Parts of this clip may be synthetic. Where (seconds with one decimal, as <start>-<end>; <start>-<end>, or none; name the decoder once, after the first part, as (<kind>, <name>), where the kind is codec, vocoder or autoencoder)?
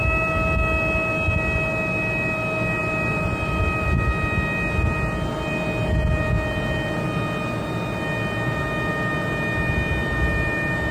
2.8-3.6 (vocoder, BigVGAN v2)